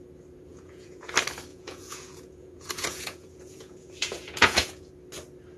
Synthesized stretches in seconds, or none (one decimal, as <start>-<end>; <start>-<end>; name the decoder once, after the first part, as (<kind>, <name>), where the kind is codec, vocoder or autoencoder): 0.5-1.1 (vocoder, Vocos); 1.5-4.9